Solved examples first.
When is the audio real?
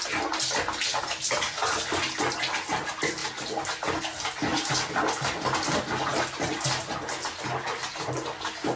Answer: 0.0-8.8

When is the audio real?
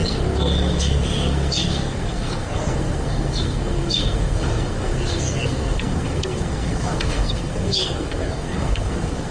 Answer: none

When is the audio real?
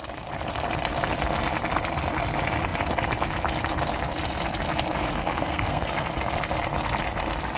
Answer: 0.0-5.0; 5.9-7.6